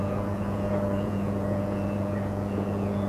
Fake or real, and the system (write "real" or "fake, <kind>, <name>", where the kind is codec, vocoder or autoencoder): fake, vocoder, Vocos